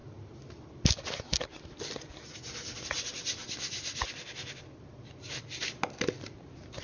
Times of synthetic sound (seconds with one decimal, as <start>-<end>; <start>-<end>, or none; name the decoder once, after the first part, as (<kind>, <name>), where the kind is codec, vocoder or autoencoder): none